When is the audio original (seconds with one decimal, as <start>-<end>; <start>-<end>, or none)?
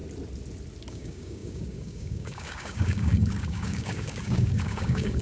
0.0-0.9